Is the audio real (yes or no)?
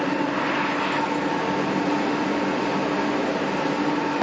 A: yes